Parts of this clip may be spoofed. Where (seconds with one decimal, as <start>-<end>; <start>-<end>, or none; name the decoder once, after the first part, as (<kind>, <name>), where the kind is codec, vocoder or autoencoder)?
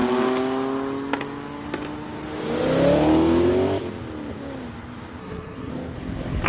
5.2-5.7 (codec, SNAC)